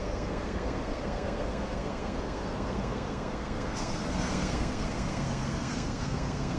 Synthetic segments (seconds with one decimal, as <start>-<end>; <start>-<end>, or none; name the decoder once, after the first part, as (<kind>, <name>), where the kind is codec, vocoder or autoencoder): 0.0-6.6 (codec, SNAC)